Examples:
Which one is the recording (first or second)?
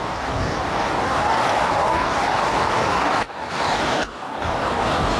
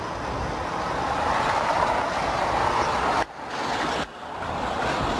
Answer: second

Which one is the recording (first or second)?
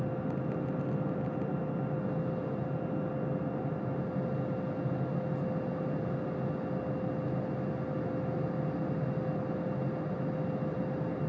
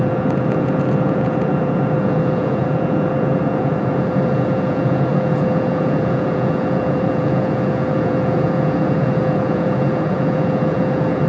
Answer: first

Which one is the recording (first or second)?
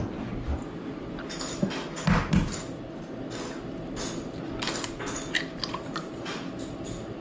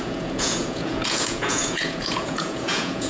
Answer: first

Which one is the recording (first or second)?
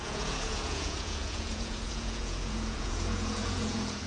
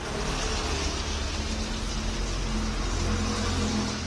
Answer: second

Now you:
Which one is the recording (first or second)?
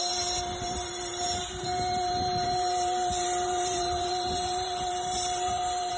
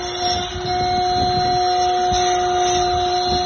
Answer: second